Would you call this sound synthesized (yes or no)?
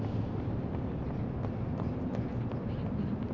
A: no